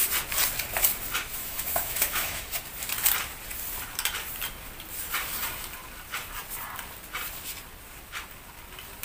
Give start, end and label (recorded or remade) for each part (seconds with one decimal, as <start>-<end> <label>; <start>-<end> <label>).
0.0-1.3 recorded; 1.3-2.4 remade; 2.4-9.0 recorded